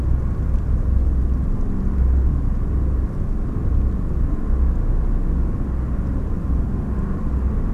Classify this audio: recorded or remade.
recorded